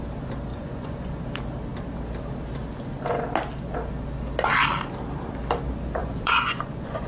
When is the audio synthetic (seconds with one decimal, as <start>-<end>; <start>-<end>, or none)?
0.5-1.2; 6.0-7.1